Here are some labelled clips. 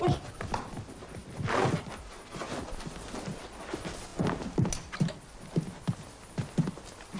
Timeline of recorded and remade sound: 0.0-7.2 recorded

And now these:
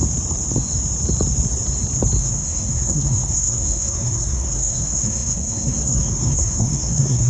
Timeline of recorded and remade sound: 0.0-2.2 recorded; 2.2-7.3 remade

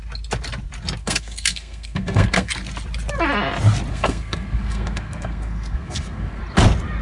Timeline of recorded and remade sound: 0.0-1.0 recorded; 1.0-2.5 remade; 2.5-3.9 recorded; 3.9-6.4 remade; 6.4-7.0 recorded

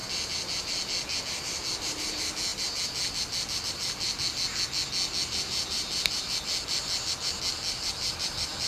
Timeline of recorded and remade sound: 0.0-8.7 recorded

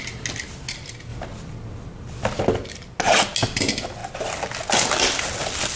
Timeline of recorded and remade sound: 0.0-5.8 recorded

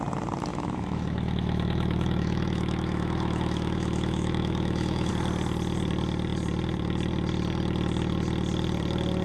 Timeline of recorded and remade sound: 0.0-0.5 recorded; 0.5-5.1 remade; 5.1-9.2 recorded

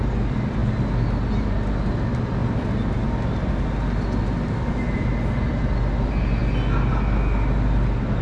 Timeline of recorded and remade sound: 0.0-8.2 recorded

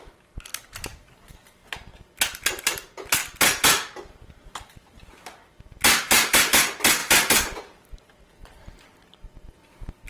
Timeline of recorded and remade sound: 0.0-1.9 remade; 1.9-2.6 recorded; 2.6-3.2 remade; 3.2-4.0 recorded; 4.0-7.0 remade; 7.0-10.1 recorded